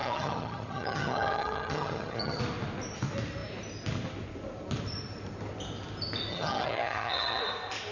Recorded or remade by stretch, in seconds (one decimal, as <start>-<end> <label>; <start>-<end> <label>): 0.0-2.4 remade; 2.4-6.3 recorded; 6.3-7.4 remade; 7.4-7.9 recorded